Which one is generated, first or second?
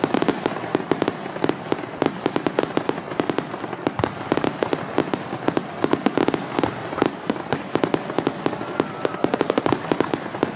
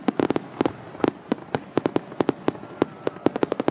first